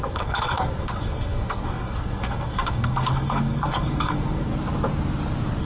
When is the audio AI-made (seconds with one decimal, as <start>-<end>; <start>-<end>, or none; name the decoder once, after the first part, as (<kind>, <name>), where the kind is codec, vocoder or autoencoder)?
0.0-4.5 (codec, SNAC)